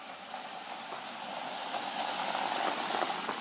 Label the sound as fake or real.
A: real